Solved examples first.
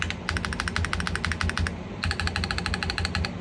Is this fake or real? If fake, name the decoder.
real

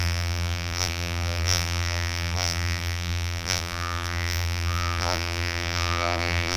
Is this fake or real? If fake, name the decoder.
fake, vocoder, BigVGAN v2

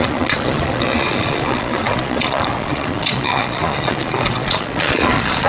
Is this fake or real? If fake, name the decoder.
fake, vocoder, Vocos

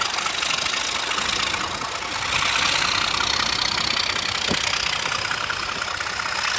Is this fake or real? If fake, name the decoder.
real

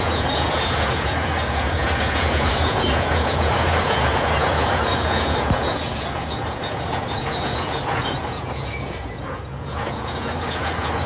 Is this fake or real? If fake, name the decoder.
fake, vocoder, Vocos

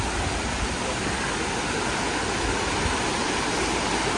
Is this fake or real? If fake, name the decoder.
real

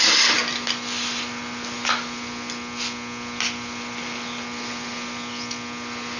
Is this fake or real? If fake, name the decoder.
real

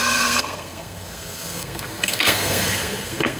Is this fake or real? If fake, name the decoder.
fake, codec, SNAC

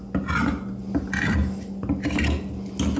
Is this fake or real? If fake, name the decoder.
real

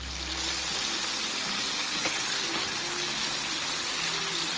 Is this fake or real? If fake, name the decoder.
real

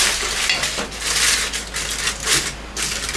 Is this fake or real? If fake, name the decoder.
real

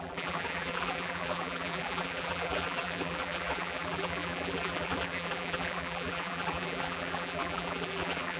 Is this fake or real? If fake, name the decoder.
fake, vocoder, BigVGAN v2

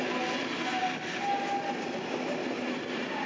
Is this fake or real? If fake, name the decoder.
real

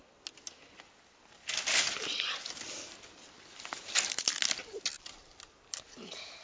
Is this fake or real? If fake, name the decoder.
real